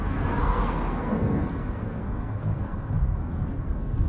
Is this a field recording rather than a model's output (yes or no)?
no